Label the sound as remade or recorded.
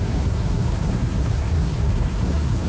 remade